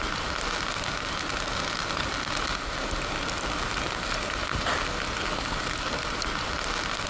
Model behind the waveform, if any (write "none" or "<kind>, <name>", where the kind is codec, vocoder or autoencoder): none